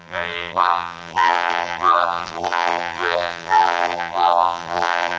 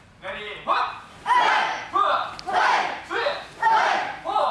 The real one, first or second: second